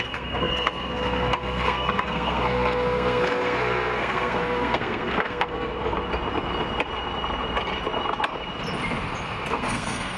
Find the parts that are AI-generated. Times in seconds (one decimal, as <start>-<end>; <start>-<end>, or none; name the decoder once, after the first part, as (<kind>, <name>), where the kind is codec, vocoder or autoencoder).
0.0-5.7 (codec, SNAC); 9.5-10.2